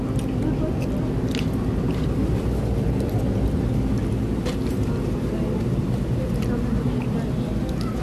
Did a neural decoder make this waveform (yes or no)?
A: no